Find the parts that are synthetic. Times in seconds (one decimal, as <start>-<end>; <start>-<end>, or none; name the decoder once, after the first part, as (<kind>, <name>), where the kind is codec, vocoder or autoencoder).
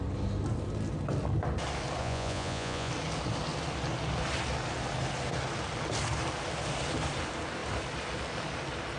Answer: 2.0-2.9 (vocoder, Vocos)